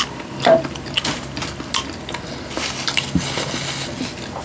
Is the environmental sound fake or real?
real